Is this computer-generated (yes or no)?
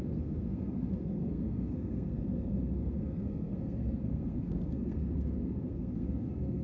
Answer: yes